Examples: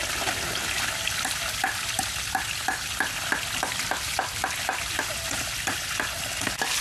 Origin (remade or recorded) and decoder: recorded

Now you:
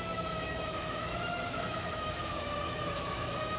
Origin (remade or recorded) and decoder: remade, autoencoder, DAC-VAE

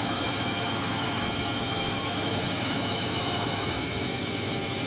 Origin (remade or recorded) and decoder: remade, autoencoder, DAC-VAE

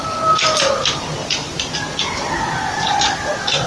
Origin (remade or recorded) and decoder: recorded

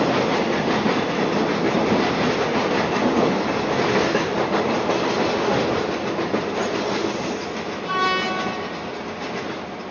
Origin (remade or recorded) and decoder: recorded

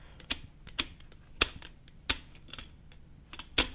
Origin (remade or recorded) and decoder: recorded